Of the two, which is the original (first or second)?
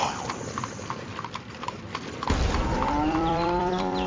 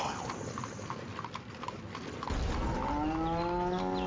second